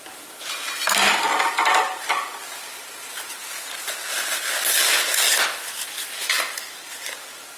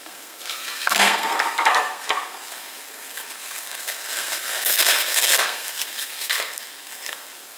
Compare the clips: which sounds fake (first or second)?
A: second